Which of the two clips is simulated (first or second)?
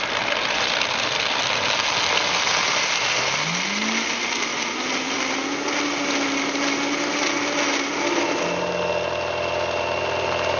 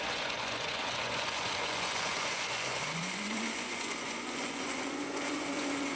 second